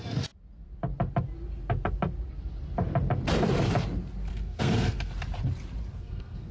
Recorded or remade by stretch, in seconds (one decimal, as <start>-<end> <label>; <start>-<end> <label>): 0.0-4.3 recorded; 4.3-5.1 remade; 5.1-5.9 recorded; 5.9-6.5 remade